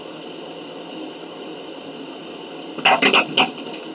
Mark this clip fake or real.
real